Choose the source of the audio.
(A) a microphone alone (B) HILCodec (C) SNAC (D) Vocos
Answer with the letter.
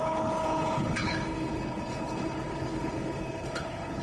B